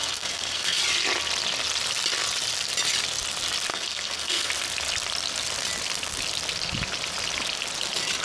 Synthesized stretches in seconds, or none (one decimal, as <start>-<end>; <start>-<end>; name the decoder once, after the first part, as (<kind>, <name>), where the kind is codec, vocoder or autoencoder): 0.0-0.8 (codec, SNAC); 3.7-4.5